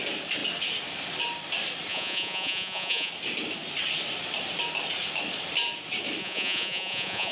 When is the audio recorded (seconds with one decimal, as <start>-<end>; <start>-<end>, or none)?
0.0-1.9; 3.1-6.2